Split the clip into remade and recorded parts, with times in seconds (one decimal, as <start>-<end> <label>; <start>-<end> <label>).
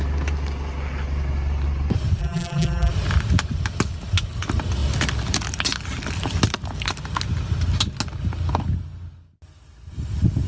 0.0-2.2 recorded; 2.2-2.9 remade; 2.9-10.5 recorded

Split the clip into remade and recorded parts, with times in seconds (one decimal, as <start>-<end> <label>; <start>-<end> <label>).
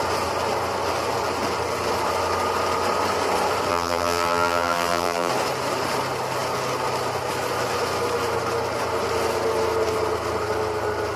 0.0-3.7 recorded; 3.7-5.3 remade; 5.3-11.2 recorded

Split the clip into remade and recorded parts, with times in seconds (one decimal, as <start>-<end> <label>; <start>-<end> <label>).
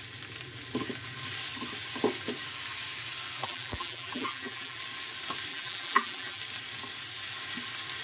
0.0-3.4 recorded; 3.4-4.8 remade; 4.8-5.5 recorded; 5.5-6.4 remade; 6.4-8.0 recorded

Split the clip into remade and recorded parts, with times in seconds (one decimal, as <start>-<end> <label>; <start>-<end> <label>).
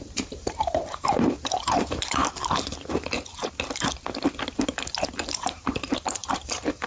0.0-2.2 remade; 2.2-5.2 recorded; 5.2-6.9 remade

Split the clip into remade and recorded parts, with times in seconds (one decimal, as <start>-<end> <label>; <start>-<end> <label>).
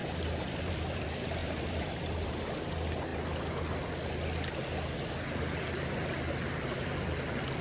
0.0-3.1 remade; 3.1-5.7 recorded; 5.7-7.6 remade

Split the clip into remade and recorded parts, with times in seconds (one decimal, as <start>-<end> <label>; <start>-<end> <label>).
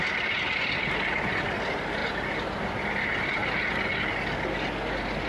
0.0-2.0 recorded; 2.0-2.6 remade; 2.6-5.3 recorded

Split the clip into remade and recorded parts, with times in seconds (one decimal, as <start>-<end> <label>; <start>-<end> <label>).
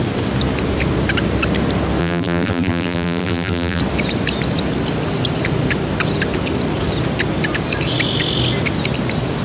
0.0-2.0 recorded; 2.0-3.8 remade; 3.8-9.4 recorded